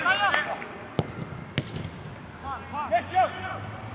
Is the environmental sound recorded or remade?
recorded